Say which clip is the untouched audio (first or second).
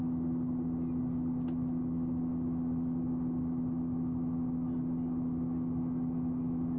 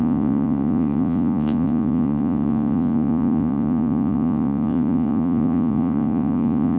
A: first